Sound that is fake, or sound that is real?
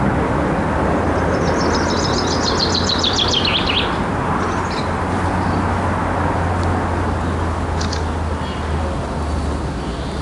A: real